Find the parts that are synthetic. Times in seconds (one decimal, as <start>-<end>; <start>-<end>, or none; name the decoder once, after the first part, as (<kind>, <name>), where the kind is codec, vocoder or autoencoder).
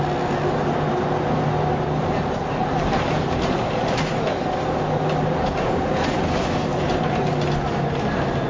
2.0-4.1 (vocoder, BigVGAN v2); 6.7-7.3